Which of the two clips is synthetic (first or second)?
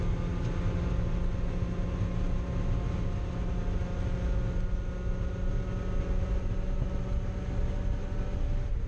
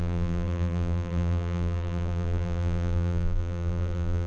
second